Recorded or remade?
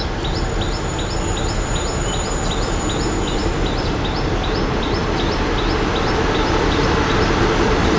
recorded